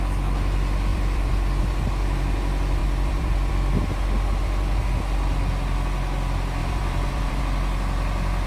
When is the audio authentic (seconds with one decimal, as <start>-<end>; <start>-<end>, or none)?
0.0-0.9; 1.6-2.8; 3.5-6.6; 7.4-8.5